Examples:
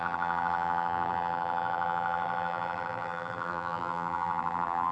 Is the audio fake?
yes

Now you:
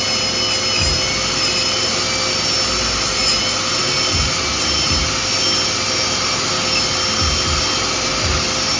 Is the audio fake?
no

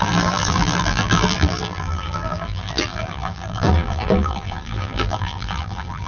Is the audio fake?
yes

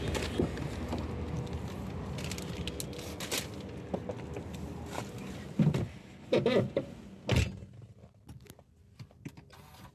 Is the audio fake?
no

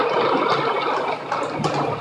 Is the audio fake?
no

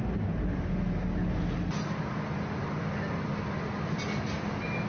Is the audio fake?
no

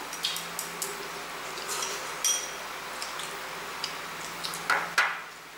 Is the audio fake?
no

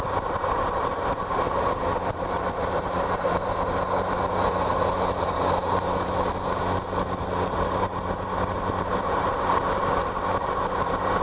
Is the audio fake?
yes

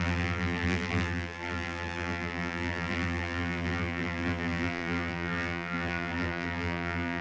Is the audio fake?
yes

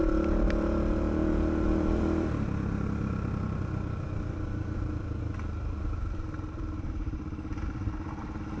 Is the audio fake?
yes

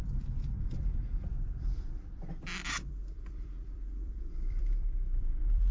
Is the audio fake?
yes